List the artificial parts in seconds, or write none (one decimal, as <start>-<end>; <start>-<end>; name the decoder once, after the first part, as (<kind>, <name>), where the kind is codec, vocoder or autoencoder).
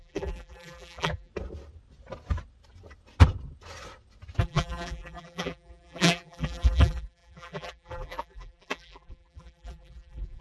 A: 0.0-1.3 (vocoder, BigVGAN v2); 4.4-10.4